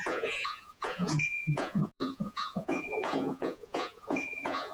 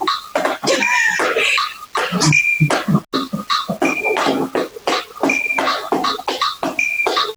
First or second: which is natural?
second